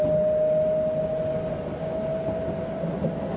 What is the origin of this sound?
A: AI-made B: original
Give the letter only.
B